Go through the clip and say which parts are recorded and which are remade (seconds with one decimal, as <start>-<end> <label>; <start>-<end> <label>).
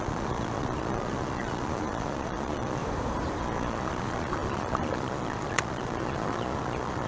0.0-2.8 remade; 2.8-3.4 recorded; 3.4-7.1 remade